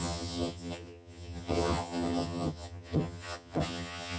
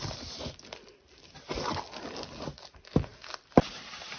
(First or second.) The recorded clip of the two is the second